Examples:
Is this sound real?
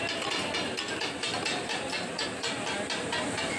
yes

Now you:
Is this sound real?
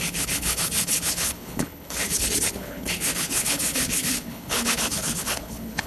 no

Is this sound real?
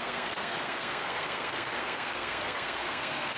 no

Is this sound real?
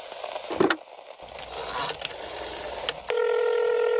yes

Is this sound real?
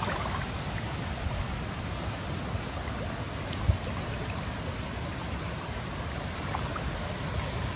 yes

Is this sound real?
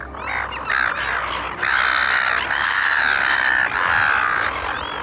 yes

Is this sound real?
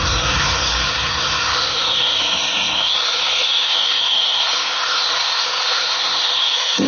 no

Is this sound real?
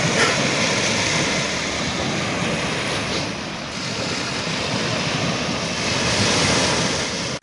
yes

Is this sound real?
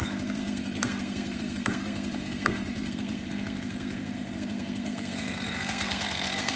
no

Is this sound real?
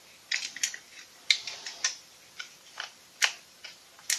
yes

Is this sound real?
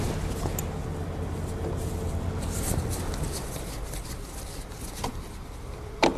yes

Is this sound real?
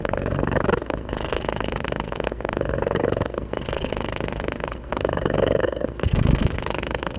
no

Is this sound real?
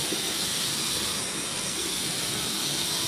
no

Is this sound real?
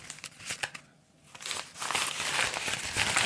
yes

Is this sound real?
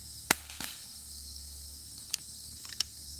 no